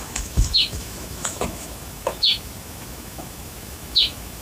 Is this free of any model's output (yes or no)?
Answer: no